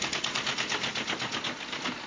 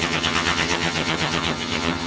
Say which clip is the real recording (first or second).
first